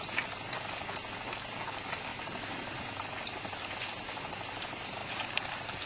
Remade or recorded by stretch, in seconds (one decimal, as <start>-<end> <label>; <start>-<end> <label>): 0.0-2.1 recorded; 2.1-2.8 remade; 2.8-5.9 recorded

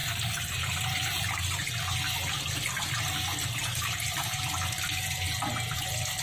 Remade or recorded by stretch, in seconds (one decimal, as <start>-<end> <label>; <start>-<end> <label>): 0.0-1.7 remade; 1.7-3.7 recorded; 3.7-4.5 remade; 4.5-6.2 recorded

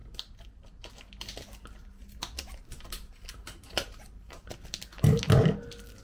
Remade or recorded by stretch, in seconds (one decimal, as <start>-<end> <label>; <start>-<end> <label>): 0.0-0.9 remade; 0.9-2.6 recorded; 2.6-4.5 remade; 4.5-6.0 recorded

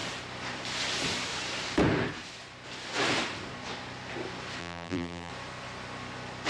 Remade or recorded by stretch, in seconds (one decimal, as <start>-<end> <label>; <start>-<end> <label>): 0.0-4.6 recorded; 4.6-5.3 remade; 5.3-6.5 recorded